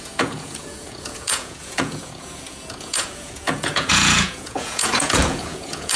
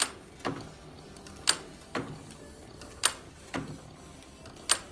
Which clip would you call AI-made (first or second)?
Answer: first